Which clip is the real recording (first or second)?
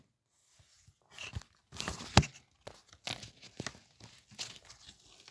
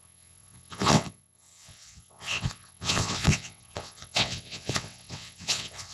first